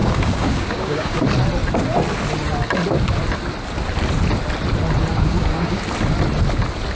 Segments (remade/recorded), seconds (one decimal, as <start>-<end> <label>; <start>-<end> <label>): 0.0-1.2 remade; 1.2-5.1 recorded; 5.1-5.8 remade; 5.8-6.9 recorded